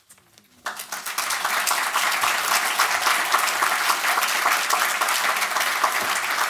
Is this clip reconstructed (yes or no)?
no